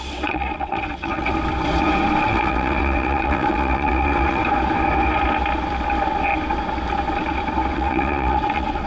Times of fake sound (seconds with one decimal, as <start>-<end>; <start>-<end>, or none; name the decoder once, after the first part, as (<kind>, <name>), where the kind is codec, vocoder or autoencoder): 0.0-1.3 (vocoder, WaveNeXt); 2.2-4.4; 7.7-8.9